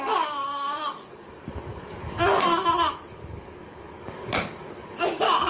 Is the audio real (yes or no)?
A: no